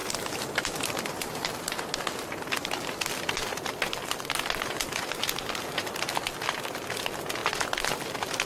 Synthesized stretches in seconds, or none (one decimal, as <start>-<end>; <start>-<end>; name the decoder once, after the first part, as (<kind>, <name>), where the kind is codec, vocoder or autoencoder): 0.0-3.3 (vocoder, BigVGAN v2)